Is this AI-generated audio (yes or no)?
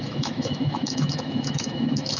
yes